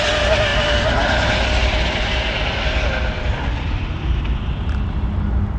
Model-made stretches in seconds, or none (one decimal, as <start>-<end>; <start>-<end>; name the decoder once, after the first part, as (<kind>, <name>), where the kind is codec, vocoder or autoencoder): none